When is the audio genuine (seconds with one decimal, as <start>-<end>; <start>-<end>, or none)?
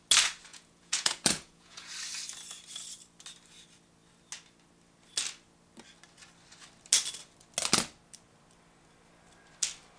0.0-0.5; 1.9-10.0